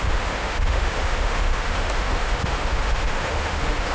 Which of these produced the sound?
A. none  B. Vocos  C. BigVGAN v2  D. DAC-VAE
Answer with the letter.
D